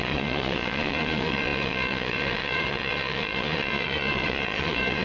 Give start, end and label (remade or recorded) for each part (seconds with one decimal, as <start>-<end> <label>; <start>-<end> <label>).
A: 0.0-5.0 remade